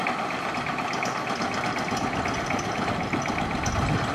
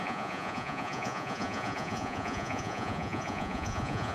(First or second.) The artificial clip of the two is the second